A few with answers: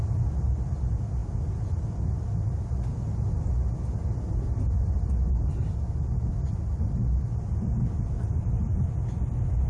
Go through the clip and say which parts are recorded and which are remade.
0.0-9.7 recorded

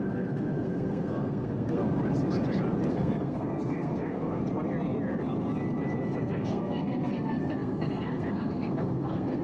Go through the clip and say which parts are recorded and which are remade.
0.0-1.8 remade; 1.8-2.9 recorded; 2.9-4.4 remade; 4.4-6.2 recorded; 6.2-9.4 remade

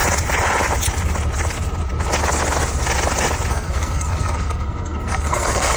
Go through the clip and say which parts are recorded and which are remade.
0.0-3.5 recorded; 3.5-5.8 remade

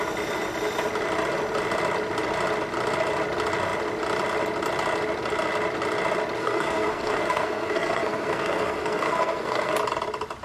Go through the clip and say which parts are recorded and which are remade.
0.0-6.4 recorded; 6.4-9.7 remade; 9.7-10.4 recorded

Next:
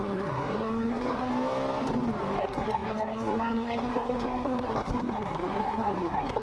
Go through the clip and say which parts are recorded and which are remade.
0.0-1.3 remade; 1.3-2.4 recorded; 2.4-6.4 remade

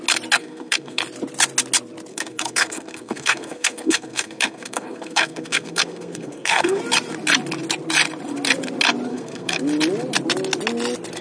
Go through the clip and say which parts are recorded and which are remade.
0.0-0.4 recorded; 0.4-1.0 remade; 1.0-2.1 recorded; 2.1-6.8 remade; 6.8-9.1 recorded; 9.1-9.6 remade; 9.6-11.2 recorded